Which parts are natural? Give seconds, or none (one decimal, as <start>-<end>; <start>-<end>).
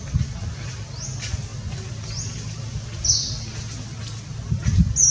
0.0-5.1